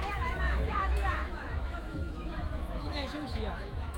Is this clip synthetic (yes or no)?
yes